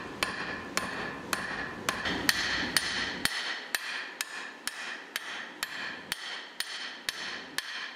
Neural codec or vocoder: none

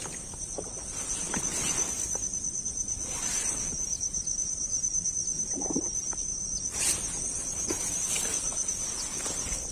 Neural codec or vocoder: vocoder, BigVGAN v2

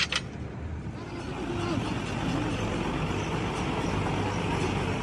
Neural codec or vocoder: none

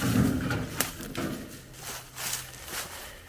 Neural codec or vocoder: none